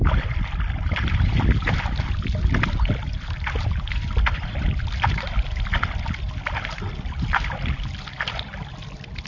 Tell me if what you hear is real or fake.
real